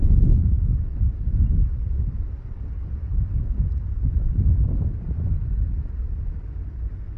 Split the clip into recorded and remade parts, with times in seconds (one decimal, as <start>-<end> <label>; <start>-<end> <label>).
0.0-7.2 recorded